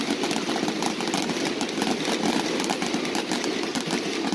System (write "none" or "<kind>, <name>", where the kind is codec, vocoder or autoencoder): none